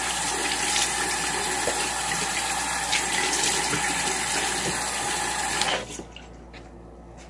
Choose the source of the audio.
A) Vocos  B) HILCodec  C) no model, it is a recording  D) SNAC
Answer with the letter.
C